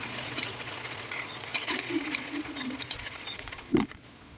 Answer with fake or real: fake